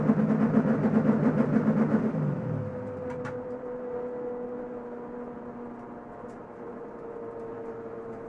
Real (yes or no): yes